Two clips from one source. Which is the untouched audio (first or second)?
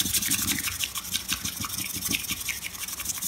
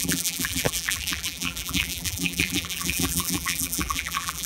first